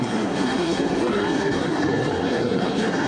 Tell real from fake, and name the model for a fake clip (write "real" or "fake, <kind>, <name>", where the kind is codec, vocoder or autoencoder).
fake, codec, SNAC